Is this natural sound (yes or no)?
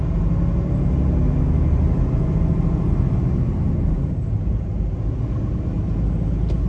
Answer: yes